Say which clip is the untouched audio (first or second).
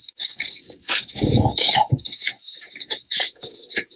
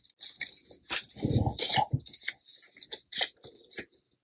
second